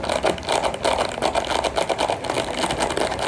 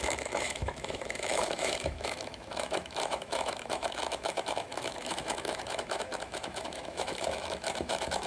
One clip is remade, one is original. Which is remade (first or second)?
second